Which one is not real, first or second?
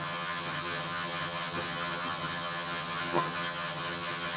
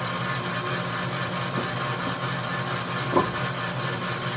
first